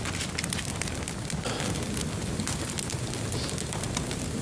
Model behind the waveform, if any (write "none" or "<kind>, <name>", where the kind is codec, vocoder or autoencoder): none